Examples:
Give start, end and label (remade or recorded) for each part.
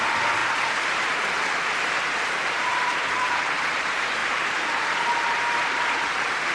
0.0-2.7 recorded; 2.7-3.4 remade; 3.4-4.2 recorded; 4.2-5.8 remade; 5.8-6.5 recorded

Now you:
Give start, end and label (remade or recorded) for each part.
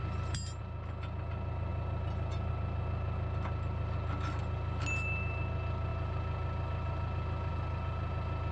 0.0-8.5 recorded